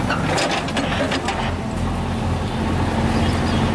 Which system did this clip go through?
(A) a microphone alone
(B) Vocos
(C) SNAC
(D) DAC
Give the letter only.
A